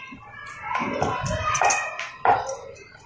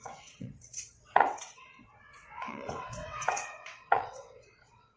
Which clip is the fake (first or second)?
second